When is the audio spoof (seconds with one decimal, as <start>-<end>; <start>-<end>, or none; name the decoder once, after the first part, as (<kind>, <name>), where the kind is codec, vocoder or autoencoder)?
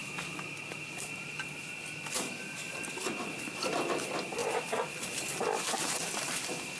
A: 2.0-4.4 (vocoder, BigVGAN v2); 5.7-6.8